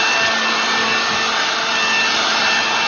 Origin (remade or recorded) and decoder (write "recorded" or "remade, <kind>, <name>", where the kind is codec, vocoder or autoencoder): recorded